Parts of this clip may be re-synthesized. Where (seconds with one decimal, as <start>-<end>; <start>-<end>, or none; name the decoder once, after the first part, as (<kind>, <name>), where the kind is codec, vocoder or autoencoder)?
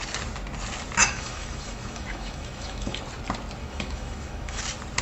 1.0-3.0 (autoencoder, DAC-VAE); 3.6-4.6